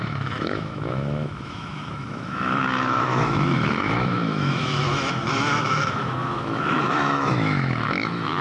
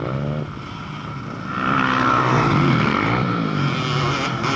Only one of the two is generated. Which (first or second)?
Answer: first